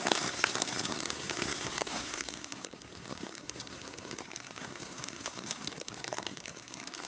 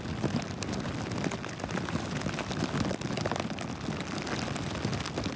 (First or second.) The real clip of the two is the second